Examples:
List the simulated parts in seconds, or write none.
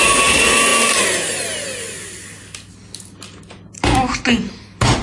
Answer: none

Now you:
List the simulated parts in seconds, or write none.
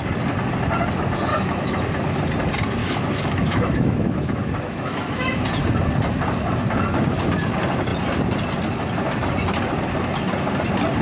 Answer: 1.3-1.8 (autoencoder, DAC-VAE); 2.8-5.3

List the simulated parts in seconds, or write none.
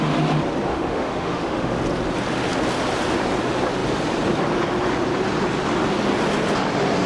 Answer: 0.7-1.8 (autoencoder, DAC-VAE)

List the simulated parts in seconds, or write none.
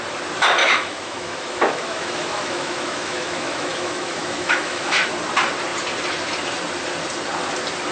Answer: 0.6-5.1 (autoencoder, DAC-VAE)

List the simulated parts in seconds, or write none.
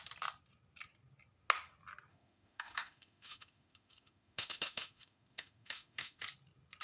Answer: 2.1-6.2 (autoencoder, DAC-VAE)